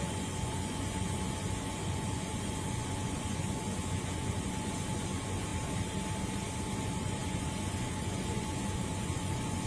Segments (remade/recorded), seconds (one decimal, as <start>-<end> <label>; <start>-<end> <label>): 0.0-5.5 remade; 5.5-6.7 recorded; 6.7-9.7 remade